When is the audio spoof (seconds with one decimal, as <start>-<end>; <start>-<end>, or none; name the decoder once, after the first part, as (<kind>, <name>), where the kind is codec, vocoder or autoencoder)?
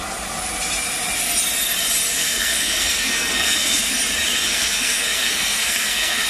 2.2-3.9 (codec, SNAC); 4.3-6.3